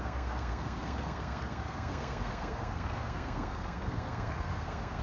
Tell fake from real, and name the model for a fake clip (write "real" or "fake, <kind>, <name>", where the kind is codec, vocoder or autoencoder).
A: fake, codec, SNAC